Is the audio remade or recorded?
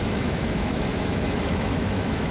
remade